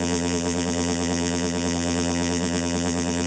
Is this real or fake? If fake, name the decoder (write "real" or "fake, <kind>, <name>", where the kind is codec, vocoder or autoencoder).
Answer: fake, vocoder, BigVGAN v2